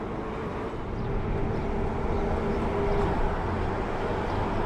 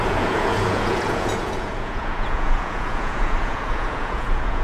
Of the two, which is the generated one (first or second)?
second